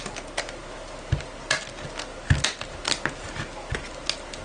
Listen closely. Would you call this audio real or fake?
real